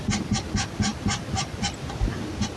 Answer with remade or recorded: recorded